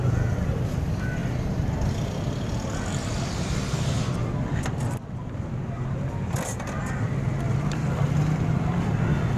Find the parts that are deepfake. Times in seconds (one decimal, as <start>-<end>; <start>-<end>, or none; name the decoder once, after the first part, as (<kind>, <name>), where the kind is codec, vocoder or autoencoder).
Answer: none